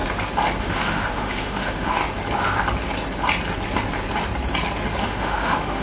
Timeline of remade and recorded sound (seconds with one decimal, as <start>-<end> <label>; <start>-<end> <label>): 0.0-0.6 recorded; 0.6-2.0 remade; 2.0-5.0 recorded; 5.0-5.8 remade